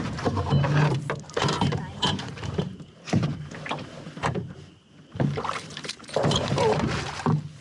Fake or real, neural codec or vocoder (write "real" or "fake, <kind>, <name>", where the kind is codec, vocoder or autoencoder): fake, vocoder, BigVGAN v2